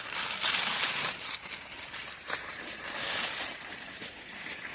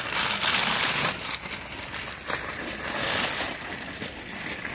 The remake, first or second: first